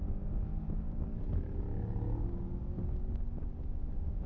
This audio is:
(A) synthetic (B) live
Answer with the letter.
B